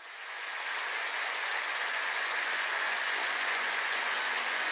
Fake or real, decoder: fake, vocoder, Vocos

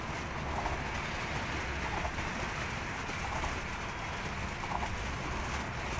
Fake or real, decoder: real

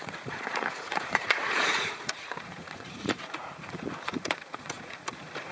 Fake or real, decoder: fake, vocoder, Vocos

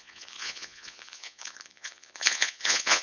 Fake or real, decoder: fake, vocoder, Vocos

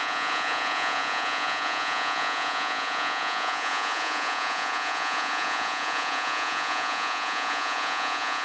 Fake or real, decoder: fake, vocoder, Vocos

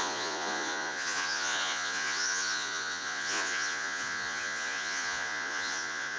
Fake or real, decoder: fake, vocoder, Vocos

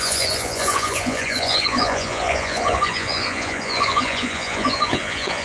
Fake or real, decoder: fake, vocoder, Vocos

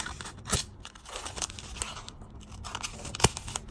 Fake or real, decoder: real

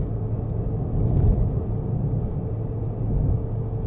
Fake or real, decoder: real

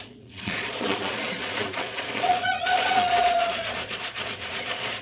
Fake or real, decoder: fake, vocoder, Vocos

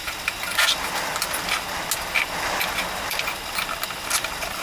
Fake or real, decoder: real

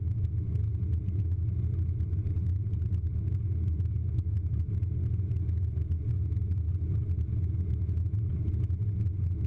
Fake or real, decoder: real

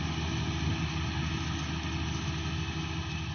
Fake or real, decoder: real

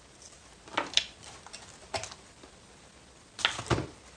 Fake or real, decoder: real